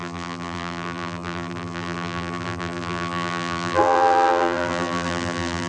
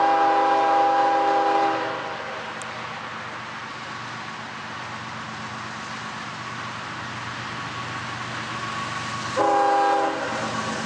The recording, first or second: second